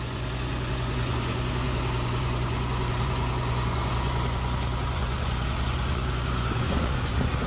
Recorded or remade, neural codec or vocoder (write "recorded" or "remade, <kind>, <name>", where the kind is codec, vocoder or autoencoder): remade, vocoder, Vocos